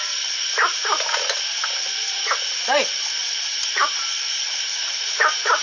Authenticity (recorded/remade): remade